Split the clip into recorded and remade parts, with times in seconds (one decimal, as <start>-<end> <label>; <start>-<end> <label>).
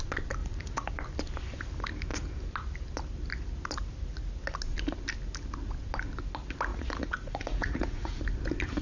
0.0-0.4 recorded; 0.4-0.9 remade; 0.9-6.7 recorded; 6.7-8.2 remade; 8.2-8.8 recorded